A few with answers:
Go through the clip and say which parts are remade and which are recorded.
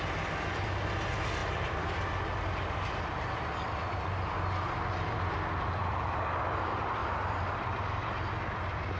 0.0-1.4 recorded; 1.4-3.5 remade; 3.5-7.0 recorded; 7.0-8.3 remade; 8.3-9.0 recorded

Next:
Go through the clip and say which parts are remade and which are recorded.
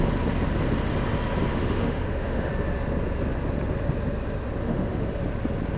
0.0-1.5 recorded; 1.5-2.5 remade; 2.5-4.6 recorded; 4.6-5.2 remade; 5.2-5.8 recorded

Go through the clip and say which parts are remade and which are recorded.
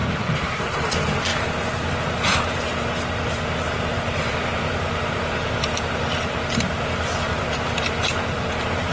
0.0-0.6 remade; 0.6-1.3 recorded; 1.3-1.9 remade; 1.9-3.9 recorded; 3.9-8.9 remade